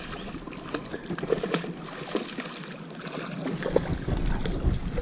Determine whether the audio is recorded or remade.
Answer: recorded